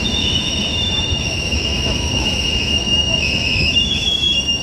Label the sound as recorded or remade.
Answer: remade